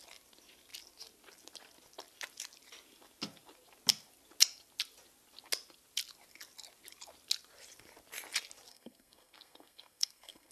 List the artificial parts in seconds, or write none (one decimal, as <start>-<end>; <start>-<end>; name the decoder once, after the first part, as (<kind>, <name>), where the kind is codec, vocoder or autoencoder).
8.7-10.5 (codec, SNAC)